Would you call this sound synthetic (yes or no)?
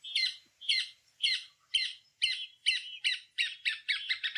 yes